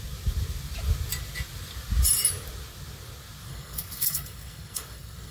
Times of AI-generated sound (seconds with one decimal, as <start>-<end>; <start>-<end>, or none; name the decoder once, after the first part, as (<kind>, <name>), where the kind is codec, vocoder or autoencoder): 3.5-5.3 (codec, SNAC)